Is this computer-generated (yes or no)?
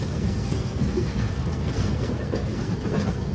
yes